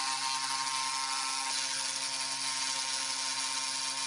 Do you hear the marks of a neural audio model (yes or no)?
no